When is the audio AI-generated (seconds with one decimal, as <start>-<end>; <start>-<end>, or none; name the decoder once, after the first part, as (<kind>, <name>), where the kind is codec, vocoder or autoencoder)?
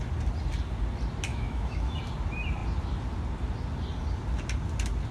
1.3-2.0 (autoencoder, DAC-VAE)